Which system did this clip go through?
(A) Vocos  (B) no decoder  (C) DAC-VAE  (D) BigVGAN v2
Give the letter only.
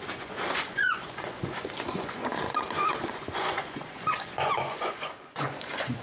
A